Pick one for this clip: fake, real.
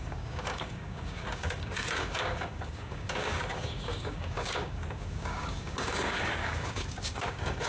fake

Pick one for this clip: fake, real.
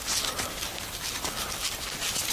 real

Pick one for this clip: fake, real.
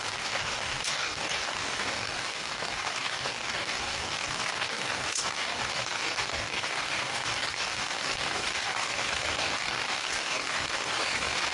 fake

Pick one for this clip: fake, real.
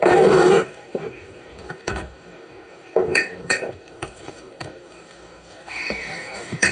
fake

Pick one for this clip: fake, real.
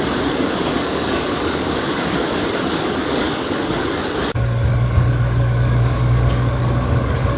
fake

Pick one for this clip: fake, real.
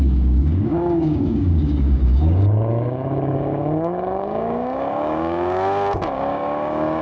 fake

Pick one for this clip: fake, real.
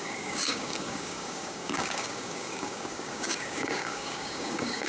fake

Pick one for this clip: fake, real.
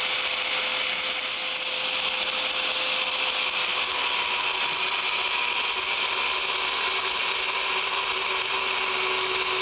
real